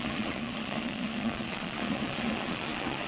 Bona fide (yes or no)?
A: no